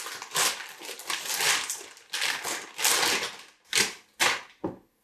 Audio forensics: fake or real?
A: real